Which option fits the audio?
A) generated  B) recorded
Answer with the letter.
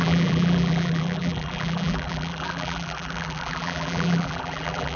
A